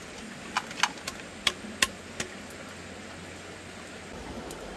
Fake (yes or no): no